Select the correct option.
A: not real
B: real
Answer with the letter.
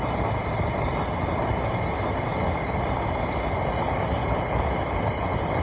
B